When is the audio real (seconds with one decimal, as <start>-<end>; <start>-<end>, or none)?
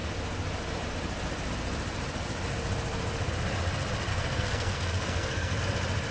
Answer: 0.0-4.1; 5.6-6.1